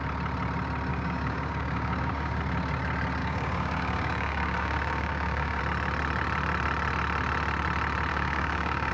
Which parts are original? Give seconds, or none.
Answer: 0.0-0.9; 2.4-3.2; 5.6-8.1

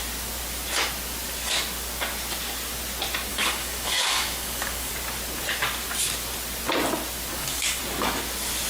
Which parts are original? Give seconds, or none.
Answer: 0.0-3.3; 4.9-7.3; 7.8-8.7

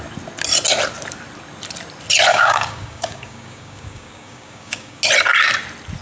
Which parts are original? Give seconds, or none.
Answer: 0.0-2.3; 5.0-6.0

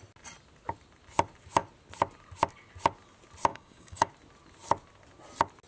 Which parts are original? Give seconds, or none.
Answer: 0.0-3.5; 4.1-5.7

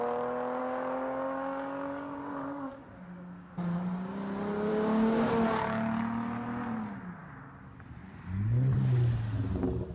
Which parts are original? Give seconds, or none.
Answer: 0.0-0.6; 3.5-4.7; 5.3-9.9